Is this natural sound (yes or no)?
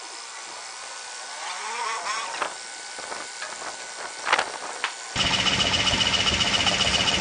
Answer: yes